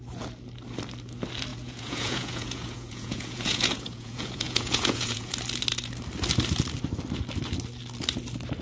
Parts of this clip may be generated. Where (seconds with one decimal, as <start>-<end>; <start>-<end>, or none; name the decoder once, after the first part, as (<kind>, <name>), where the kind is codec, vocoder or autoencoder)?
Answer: 1.5-5.3 (vocoder, Vocos)